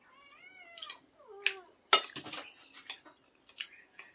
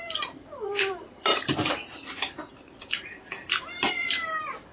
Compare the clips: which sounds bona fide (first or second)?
first